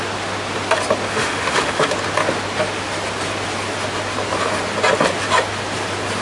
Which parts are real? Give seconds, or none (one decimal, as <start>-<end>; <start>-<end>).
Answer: 0.0-1.1; 1.9-6.2